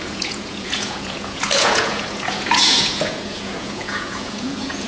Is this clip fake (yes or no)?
yes